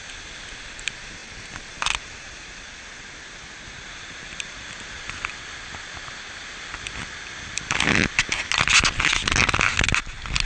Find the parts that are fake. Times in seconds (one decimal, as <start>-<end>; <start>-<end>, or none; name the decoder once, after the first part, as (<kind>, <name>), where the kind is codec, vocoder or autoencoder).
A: 1.2-1.8 (vocoder, BigVGAN v2)